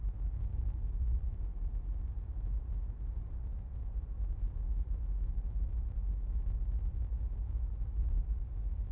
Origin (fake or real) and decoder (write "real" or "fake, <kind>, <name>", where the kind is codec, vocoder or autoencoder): real